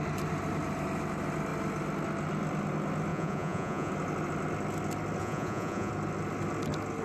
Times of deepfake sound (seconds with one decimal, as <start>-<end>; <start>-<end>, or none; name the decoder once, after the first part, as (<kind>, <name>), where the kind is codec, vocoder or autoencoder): 3.1-3.9 (vocoder, Vocos); 5.2-5.9